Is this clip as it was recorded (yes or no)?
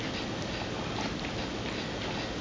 yes